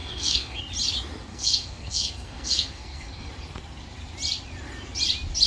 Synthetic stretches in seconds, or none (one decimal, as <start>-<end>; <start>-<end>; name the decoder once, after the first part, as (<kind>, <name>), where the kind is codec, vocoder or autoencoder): 0.0-0.6 (codec, SNAC); 1.3-3.3